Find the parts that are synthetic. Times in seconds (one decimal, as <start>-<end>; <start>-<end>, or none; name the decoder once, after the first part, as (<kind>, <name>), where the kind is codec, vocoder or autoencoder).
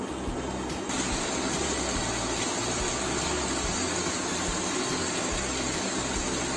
none